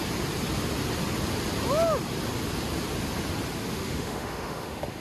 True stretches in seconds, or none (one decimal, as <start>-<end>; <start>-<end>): 0.0-3.7